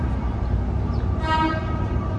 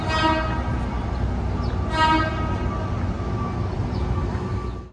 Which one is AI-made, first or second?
first